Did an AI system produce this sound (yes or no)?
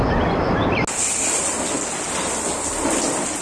no